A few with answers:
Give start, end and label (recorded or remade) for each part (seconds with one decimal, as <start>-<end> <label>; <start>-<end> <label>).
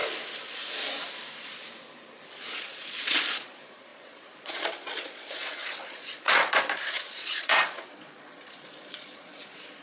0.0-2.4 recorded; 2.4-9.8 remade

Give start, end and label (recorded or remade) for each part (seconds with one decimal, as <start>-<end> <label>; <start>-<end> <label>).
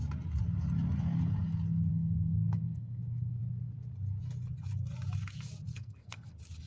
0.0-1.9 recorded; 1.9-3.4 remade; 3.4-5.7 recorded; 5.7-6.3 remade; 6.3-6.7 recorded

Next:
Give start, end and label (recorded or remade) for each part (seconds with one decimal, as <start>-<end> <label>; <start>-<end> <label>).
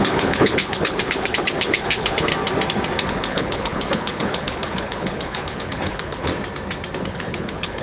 0.0-2.3 remade; 2.3-3.1 recorded; 3.1-6.3 remade; 6.3-7.0 recorded; 7.0-7.8 remade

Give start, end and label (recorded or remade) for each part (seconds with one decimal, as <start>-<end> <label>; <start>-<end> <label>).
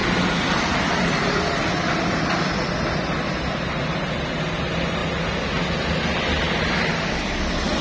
0.0-7.8 recorded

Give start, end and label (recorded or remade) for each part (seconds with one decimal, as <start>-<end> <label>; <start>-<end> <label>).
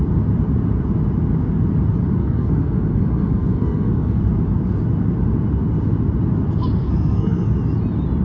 0.0-2.2 recorded; 2.2-4.2 remade; 4.2-6.8 recorded; 6.8-7.5 remade; 7.5-8.2 recorded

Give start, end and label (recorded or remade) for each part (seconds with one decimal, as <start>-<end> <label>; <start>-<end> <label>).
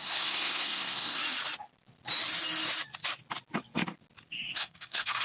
0.0-1.2 remade; 1.2-4.3 recorded; 4.3-5.2 remade